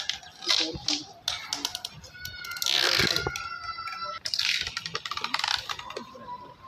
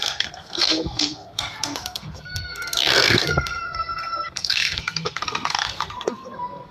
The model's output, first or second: second